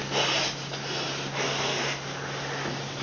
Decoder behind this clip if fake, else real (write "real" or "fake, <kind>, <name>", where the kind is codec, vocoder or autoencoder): real